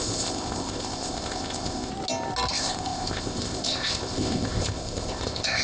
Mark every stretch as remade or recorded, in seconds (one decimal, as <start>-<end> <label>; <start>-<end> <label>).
0.0-1.9 remade; 1.9-2.5 recorded; 2.5-5.6 remade